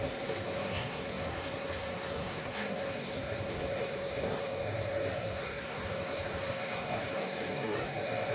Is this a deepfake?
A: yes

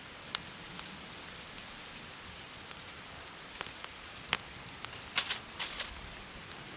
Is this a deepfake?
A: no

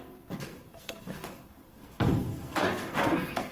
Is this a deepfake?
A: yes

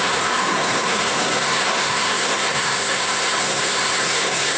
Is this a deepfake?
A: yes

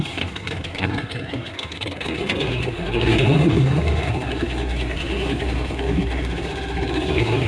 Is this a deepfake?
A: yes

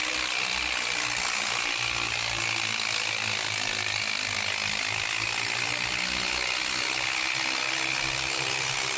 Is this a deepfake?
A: no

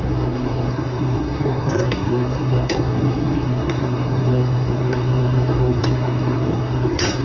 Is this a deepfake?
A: yes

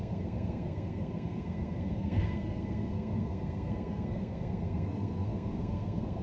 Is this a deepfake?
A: yes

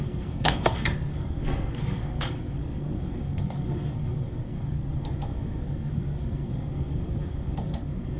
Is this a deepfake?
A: yes